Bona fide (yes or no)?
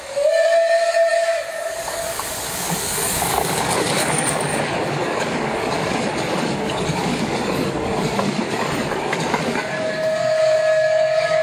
no